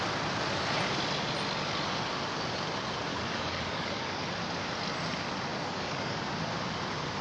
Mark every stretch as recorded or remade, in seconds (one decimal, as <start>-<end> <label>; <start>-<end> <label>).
0.0-3.1 recorded; 3.1-4.2 remade; 4.2-5.5 recorded; 5.5-6.2 remade; 6.2-7.2 recorded